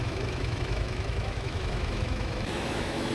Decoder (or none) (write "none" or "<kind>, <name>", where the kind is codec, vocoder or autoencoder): autoencoder, DAC-VAE